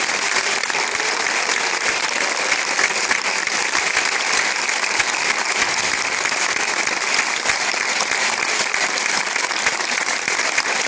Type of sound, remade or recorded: recorded